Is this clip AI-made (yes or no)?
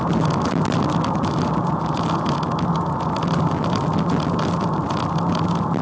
no